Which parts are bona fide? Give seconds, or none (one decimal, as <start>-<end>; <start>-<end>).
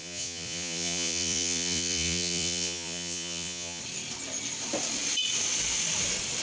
3.8-6.4